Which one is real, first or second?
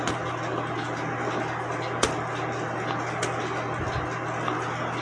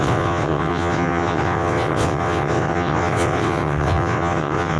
first